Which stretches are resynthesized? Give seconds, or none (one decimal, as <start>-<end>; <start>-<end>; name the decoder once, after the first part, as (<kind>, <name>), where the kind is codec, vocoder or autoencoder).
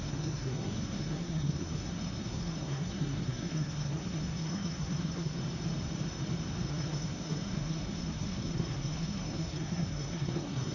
0.0-5.4 (codec, SNAC); 6.7-10.7